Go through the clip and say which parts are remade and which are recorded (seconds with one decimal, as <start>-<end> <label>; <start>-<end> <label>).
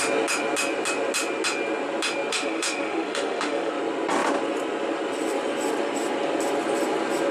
0.0-2.3 recorded; 2.3-3.7 remade; 3.7-7.3 recorded